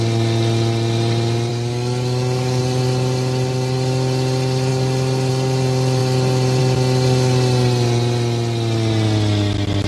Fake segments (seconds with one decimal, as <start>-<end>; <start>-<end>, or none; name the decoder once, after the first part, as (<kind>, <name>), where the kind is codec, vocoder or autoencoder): 1.5-2.6 (codec, DAC)